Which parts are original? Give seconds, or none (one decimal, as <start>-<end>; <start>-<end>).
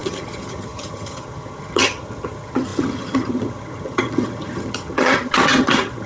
none